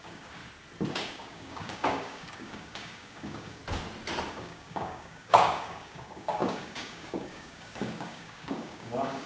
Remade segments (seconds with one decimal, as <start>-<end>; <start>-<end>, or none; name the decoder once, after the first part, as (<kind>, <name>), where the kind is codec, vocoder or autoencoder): 0.0-0.4 (codec, DAC); 0.9-3.6; 4.3-9.3